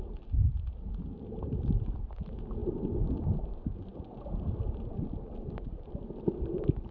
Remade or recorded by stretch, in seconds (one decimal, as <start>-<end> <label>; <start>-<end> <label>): 0.0-6.9 recorded